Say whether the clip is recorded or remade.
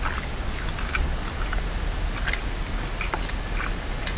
recorded